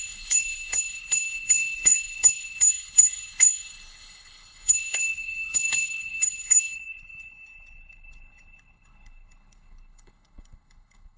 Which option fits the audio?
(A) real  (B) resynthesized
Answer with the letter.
B